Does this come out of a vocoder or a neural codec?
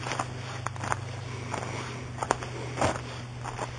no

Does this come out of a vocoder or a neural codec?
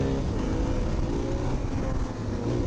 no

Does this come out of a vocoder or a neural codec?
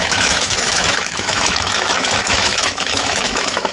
yes